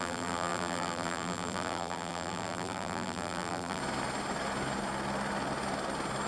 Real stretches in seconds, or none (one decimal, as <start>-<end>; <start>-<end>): 3.8-6.3

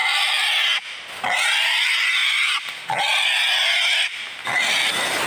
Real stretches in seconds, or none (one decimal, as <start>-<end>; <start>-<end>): 0.6-2.2; 2.7-5.3

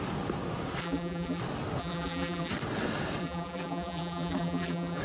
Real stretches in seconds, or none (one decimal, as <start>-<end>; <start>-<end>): 0.0-0.8; 1.4-1.8; 2.5-3.2

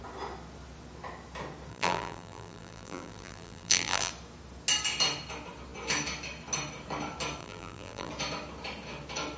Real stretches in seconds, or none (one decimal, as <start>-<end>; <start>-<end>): 0.0-1.7; 4.1-7.4; 8.1-9.4

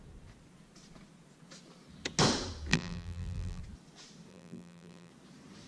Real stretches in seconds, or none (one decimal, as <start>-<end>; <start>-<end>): 0.0-2.7; 3.6-4.3; 5.1-5.7

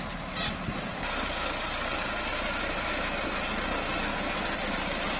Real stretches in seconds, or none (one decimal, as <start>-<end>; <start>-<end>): 0.0-2.3; 2.9-4.1